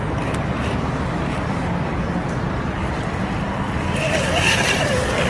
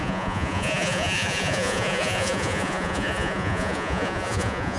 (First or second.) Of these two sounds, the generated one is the second